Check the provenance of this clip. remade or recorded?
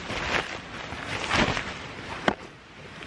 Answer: recorded